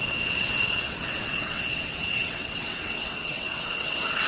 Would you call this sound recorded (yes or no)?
no